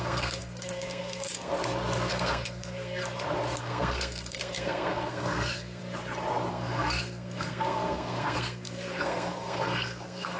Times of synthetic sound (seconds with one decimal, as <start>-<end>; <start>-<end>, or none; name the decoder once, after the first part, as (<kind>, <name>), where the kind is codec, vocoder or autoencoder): 0.0-1.5 (codec, SNAC); 2.1-3.0; 3.6-5.8; 6.5-10.4